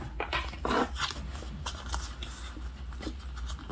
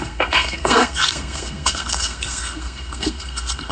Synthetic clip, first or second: second